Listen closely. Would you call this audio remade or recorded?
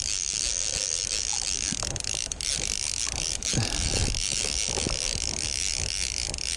recorded